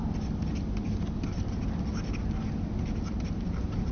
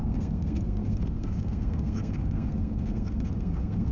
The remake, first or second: second